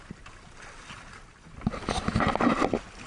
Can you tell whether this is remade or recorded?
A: recorded